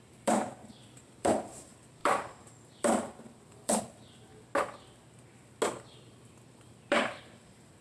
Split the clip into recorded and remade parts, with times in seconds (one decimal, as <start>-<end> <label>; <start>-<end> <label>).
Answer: 0.0-4.3 remade; 4.3-6.9 recorded; 6.9-7.8 remade